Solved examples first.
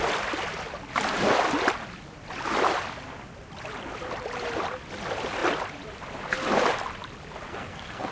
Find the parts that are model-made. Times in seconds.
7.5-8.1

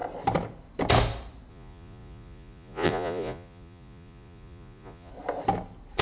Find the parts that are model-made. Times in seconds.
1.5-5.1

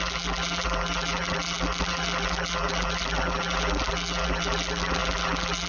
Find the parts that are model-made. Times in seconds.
0.0-5.7

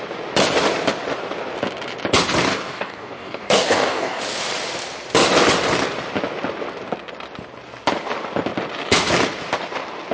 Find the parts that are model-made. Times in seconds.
2.5-4.2

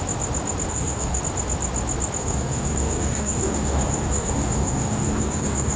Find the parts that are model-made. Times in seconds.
0.7-1.2; 2.2-5.8

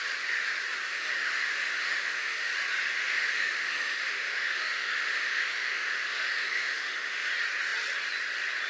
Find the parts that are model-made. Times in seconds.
0.9-2.5; 3.0-7.3